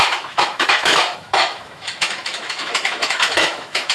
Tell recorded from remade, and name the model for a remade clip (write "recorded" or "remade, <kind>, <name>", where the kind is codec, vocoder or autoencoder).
remade, autoencoder, DAC-VAE